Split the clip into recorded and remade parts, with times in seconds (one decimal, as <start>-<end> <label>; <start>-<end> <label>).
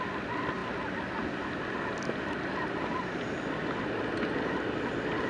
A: 0.0-5.3 recorded